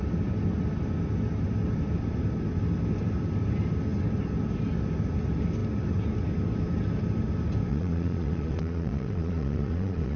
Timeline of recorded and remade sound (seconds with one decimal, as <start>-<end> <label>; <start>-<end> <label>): 0.0-7.7 recorded; 7.7-10.2 remade